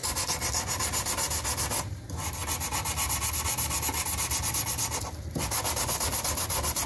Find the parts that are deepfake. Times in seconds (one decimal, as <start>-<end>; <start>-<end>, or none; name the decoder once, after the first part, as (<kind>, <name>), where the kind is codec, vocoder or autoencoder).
none